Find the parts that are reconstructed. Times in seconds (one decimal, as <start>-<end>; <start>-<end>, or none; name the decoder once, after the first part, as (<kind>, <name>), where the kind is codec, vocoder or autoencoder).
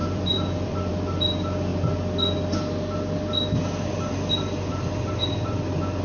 0.0-0.9 (vocoder, BigVGAN v2)